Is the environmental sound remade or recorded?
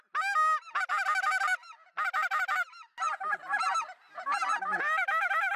recorded